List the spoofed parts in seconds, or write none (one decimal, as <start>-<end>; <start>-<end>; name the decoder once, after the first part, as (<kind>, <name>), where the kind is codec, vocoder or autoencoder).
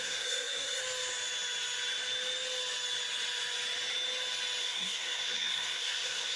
0.0-0.8 (codec, SNAC); 4.6-6.4